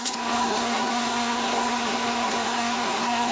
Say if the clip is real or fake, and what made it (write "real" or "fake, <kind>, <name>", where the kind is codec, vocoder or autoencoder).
fake, codec, SNAC